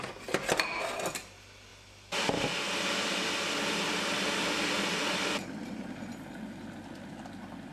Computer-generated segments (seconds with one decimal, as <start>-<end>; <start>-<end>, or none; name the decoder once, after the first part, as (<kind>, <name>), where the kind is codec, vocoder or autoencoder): none